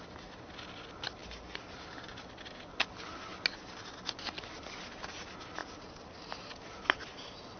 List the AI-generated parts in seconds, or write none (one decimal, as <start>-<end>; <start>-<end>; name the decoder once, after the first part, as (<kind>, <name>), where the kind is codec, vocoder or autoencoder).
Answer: none